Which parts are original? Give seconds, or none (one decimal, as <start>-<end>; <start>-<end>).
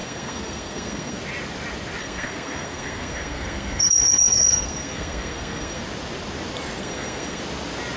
1.2-2.0; 5.8-6.8; 7.4-8.0